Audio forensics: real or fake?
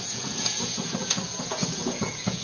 fake